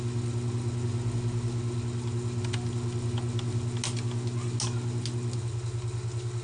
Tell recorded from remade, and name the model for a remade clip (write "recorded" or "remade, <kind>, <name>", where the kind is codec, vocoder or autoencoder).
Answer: recorded